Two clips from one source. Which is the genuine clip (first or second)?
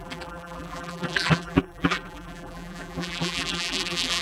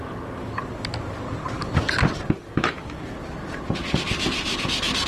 second